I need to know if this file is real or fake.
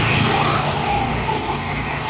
fake